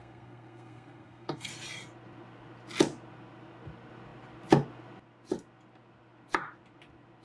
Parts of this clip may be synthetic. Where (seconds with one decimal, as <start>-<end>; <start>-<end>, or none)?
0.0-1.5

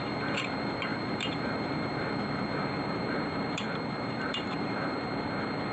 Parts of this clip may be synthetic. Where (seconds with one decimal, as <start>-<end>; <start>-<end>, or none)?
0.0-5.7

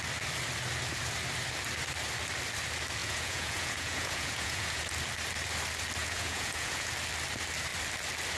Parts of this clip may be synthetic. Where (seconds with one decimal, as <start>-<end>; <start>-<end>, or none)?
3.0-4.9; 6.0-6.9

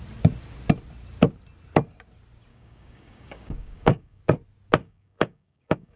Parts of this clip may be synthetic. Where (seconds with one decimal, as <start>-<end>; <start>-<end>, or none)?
2.5-4.2; 4.8-6.0

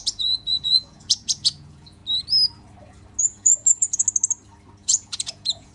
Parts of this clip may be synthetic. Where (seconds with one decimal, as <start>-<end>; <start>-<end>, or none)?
0.0-2.0; 3.2-4.0; 4.8-5.7

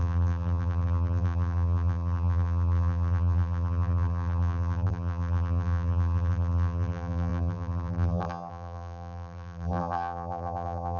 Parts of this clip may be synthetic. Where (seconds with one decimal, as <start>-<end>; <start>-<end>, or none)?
0.0-11.0

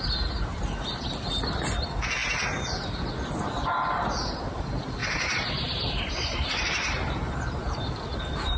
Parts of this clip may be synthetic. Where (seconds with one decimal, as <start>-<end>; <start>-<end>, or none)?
5.0-7.8

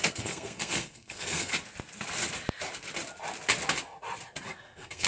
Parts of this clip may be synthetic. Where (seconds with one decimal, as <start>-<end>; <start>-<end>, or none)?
0.0-1.5; 4.6-5.1